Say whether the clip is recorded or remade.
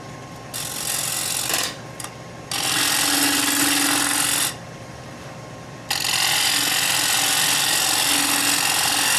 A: recorded